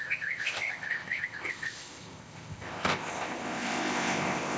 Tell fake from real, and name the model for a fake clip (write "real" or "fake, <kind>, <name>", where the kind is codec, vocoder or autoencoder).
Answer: fake, codec, ZipCodec